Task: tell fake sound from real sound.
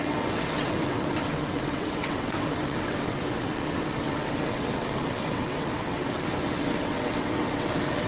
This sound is fake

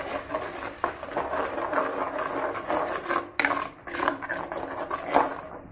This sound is real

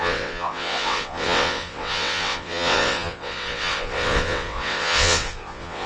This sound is fake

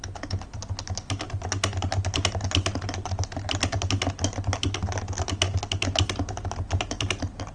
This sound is real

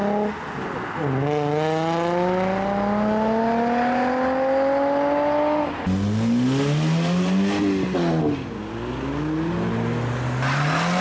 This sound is real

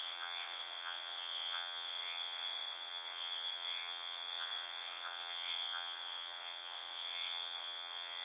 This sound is fake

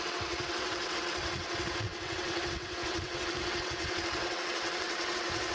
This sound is fake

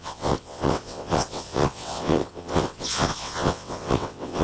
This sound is fake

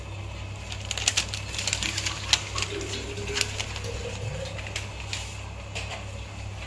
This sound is real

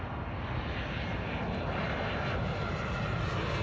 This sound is real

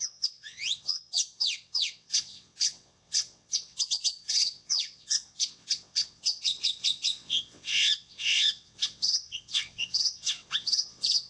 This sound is fake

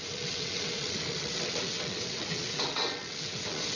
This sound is fake